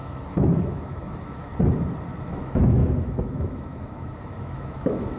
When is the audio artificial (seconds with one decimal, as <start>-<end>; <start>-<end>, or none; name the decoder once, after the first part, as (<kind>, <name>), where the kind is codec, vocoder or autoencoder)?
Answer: 0.0-1.5 (autoencoder, DAC-VAE); 2.2-5.2